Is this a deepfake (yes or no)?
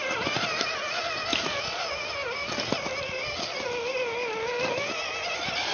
no